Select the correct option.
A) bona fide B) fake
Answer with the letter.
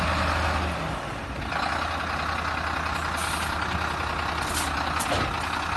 A